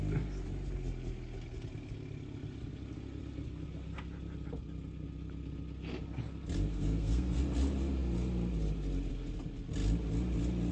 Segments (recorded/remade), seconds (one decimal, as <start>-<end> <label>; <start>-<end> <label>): 0.0-6.7 recorded; 6.7-7.4 remade; 7.4-10.7 recorded